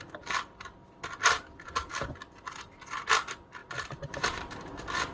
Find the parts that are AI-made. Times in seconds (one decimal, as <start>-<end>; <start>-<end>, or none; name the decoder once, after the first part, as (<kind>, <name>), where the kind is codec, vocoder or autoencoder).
3.6-4.4 (vocoder, BigVGAN v2)